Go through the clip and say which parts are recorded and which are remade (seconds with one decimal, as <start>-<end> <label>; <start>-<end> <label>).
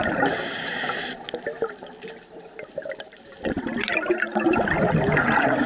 0.0-5.7 recorded